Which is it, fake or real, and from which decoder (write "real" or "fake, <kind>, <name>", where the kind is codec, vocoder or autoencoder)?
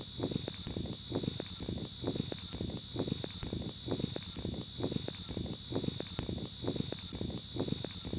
real